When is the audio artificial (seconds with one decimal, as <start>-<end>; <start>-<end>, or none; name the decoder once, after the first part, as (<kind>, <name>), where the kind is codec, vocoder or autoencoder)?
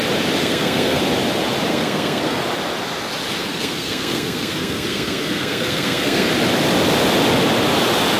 0.4-1.0 (codec, SNAC); 1.7-2.4; 3.4-6.3